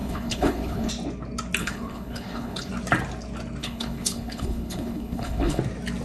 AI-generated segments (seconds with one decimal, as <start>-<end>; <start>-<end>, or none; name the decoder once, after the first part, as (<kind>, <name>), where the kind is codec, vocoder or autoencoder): 0.0-0.9 (codec, HILCodec); 1.6-2.7; 3.6-5.6